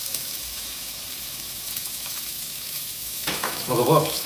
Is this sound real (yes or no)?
no